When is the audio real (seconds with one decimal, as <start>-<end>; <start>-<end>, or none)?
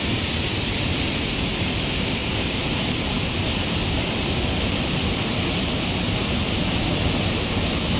0.0-8.0